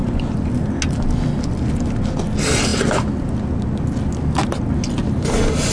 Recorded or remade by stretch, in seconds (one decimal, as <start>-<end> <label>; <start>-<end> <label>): 0.0-5.7 recorded